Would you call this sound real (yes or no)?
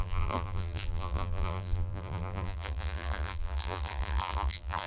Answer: no